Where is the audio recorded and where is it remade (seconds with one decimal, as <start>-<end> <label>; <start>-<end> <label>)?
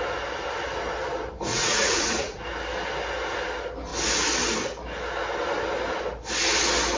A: 0.0-1.5 recorded; 1.5-2.4 remade; 2.4-7.0 recorded